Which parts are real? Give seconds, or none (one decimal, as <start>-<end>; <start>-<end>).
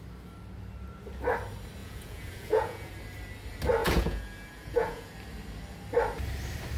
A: 0.0-1.8; 2.9-3.8; 5.1-6.8